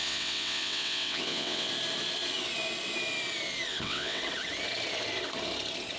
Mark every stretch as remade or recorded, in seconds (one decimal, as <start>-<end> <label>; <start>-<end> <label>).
0.0-1.7 remade; 1.7-3.7 recorded; 3.7-4.2 remade; 4.2-6.0 recorded